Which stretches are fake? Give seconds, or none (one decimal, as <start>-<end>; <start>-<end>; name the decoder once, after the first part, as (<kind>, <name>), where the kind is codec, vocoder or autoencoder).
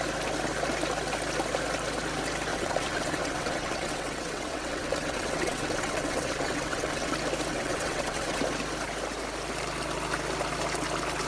2.5-7.1 (vocoder, WaveNeXt); 7.5-8.4